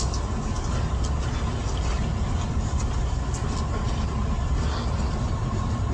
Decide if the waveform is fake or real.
real